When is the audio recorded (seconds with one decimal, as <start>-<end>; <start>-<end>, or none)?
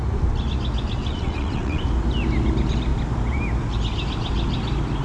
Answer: 0.0-1.0; 1.8-5.0